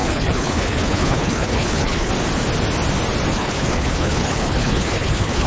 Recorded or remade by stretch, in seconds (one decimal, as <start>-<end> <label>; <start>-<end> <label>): 0.0-2.1 remade; 2.1-3.3 recorded; 3.3-5.5 remade